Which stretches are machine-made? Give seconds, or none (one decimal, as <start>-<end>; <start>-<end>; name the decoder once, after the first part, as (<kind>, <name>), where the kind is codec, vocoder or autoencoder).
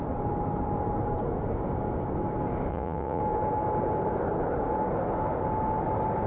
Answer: 2.7-3.2 (vocoder, Vocos)